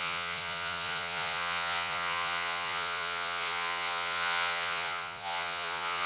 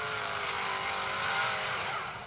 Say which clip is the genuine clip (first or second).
second